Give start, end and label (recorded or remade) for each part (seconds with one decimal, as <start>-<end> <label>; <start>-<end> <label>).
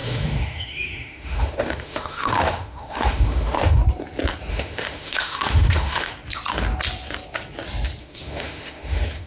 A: 0.0-3.8 remade; 3.8-4.5 recorded; 4.5-6.1 remade; 6.1-8.0 recorded; 8.0-9.3 remade